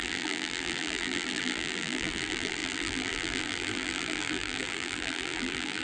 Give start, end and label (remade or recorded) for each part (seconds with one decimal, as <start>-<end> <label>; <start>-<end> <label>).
0.0-5.8 remade